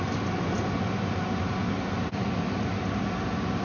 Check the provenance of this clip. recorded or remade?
recorded